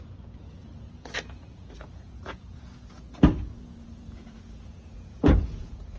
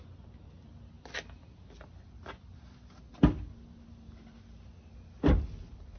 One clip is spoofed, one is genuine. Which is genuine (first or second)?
second